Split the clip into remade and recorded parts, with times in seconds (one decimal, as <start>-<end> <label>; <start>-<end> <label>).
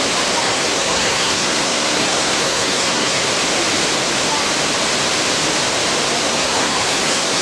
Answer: 0.0-0.4 recorded; 0.4-3.3 remade; 3.3-6.2 recorded; 6.2-7.4 remade